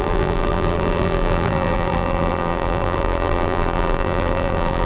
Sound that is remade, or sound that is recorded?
remade